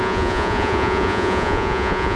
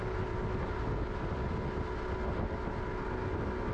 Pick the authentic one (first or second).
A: second